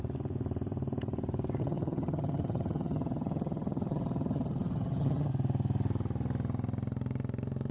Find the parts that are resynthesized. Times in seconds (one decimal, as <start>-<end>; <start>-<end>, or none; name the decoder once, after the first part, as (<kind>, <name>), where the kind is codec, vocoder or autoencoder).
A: 1.6-5.3 (vocoder, HiFi-GAN)